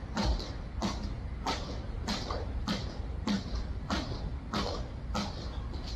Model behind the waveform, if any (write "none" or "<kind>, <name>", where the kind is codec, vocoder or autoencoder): none